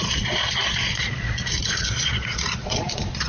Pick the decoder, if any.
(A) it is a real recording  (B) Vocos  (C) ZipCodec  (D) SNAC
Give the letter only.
B